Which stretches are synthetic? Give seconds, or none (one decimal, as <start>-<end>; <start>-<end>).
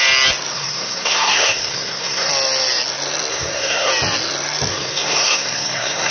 0.5-2.3; 3.3-3.9; 4.7-6.1